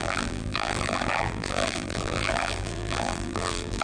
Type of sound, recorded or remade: remade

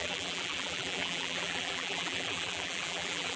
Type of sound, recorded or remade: remade